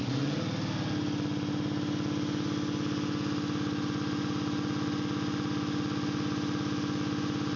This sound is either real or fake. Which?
real